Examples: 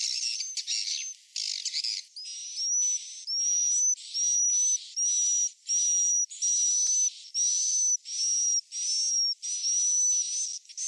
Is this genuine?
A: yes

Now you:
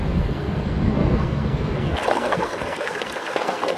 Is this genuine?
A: no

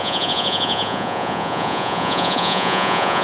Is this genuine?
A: no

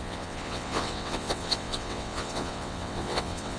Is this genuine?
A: no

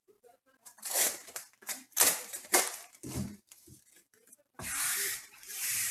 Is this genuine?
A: no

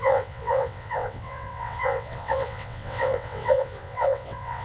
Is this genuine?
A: no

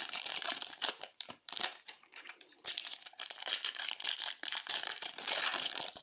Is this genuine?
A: no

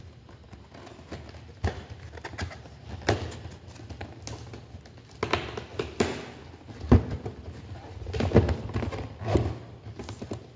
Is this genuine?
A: yes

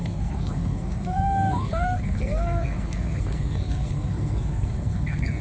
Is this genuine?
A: no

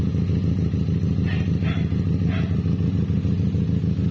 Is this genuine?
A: yes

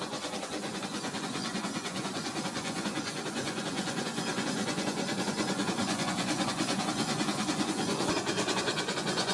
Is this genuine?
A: no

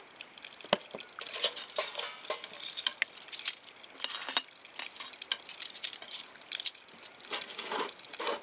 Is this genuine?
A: yes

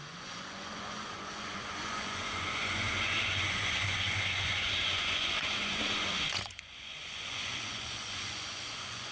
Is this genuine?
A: no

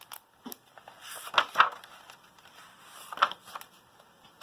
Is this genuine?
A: yes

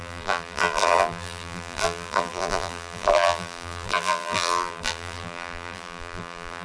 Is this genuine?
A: no